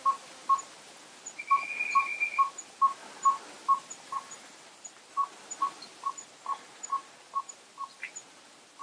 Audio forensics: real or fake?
real